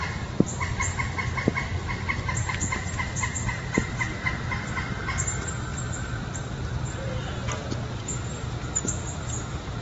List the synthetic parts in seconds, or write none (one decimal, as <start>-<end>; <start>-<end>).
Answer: none